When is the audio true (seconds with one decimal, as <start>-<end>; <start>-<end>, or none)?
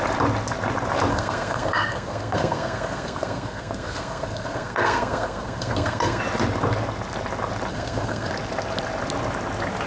0.0-1.1; 6.2-7.7; 8.3-9.9